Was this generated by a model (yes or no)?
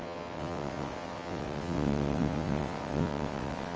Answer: yes